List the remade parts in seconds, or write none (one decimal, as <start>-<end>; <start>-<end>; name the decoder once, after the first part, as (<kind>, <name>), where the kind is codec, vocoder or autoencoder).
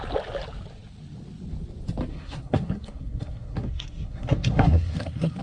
2.1-5.4 (codec, SNAC)